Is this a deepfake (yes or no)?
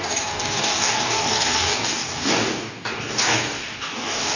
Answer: yes